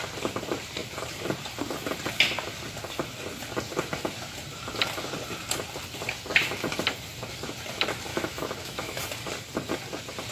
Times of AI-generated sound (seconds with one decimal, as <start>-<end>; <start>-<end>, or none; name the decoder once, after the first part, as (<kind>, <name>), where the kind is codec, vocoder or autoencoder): 8.1-9.0 (autoencoder, DAC-VAE)